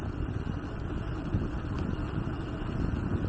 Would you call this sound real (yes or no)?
yes